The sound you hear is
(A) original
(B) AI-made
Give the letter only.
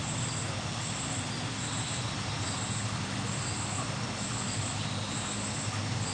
A